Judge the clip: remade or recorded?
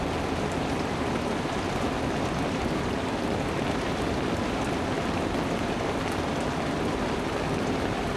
recorded